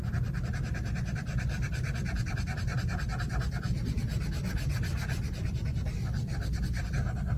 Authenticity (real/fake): real